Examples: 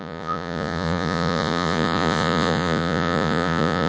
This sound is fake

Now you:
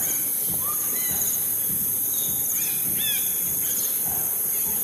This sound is real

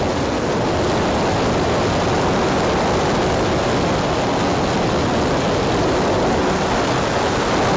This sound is real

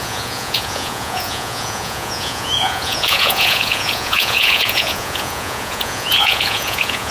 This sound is fake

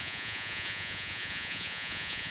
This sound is fake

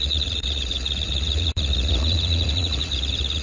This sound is fake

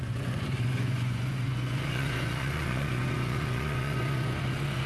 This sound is fake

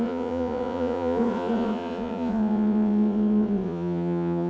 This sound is fake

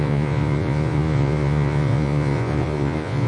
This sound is fake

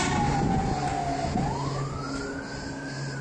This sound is real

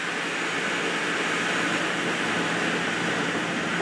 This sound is real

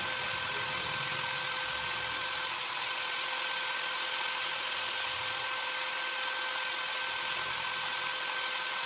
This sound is real